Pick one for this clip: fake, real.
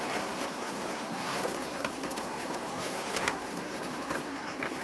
fake